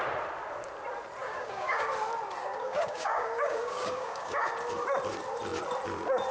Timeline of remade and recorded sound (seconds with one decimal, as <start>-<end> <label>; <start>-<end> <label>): 0.0-1.2 recorded; 1.2-1.9 remade; 1.9-2.4 recorded; 2.4-4.4 remade; 4.4-6.3 recorded